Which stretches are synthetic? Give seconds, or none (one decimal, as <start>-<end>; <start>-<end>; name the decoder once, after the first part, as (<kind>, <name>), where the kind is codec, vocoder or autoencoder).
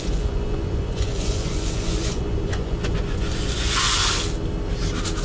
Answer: 0.0-4.0 (vocoder, Vocos)